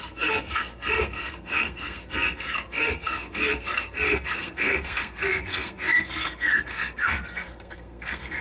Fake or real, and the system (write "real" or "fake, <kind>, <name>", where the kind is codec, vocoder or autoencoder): fake, codec, SNAC